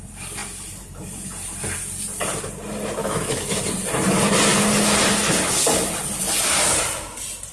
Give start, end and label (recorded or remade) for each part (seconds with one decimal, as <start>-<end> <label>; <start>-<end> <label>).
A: 0.0-3.0 recorded; 3.0-3.6 remade; 3.6-7.5 recorded